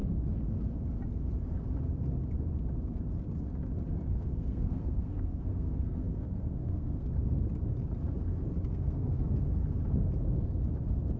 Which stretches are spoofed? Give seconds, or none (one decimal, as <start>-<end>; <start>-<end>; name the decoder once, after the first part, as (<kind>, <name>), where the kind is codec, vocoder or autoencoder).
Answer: 4.1-7.1 (codec, SNAC); 8.7-9.4